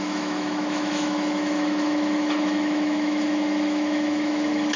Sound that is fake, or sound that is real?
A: fake